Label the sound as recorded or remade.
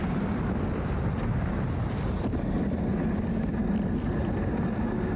recorded